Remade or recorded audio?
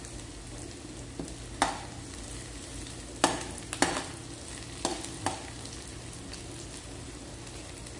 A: recorded